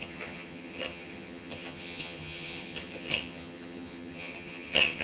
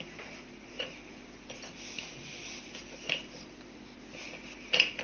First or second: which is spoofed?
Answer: first